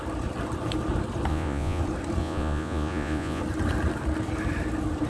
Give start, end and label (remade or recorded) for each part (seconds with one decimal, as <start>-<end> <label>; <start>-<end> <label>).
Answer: 0.0-1.3 recorded; 1.3-1.8 remade; 1.8-2.2 recorded; 2.2-3.4 remade; 3.4-5.1 recorded